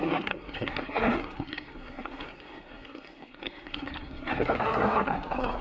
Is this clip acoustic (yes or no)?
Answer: no